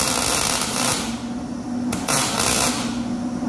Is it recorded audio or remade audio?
recorded